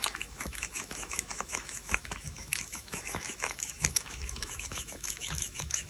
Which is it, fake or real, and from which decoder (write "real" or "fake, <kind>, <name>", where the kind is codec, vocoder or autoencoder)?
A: fake, autoencoder, DAC-VAE